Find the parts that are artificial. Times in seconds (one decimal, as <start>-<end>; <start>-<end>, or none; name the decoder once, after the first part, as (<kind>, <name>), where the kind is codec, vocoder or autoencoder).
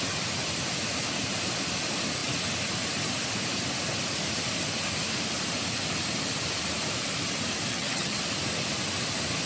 7.7-8.2 (vocoder, HiFi-GAN)